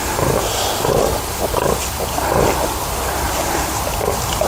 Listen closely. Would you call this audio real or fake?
real